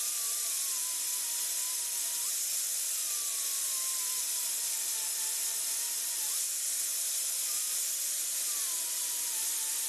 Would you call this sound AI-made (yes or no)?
no